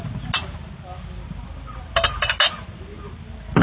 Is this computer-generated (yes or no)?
no